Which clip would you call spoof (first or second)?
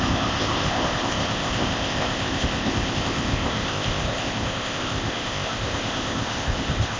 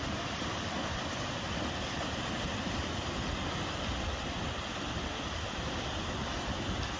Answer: first